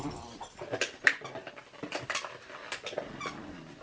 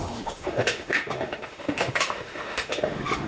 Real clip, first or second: first